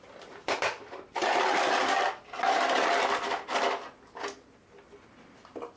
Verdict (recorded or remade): recorded